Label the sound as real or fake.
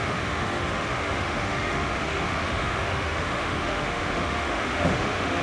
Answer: fake